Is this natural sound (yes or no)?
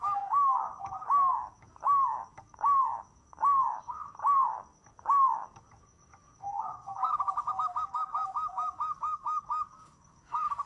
no